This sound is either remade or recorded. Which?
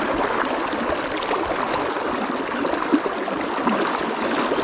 recorded